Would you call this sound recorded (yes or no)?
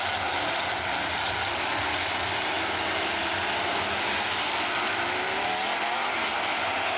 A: yes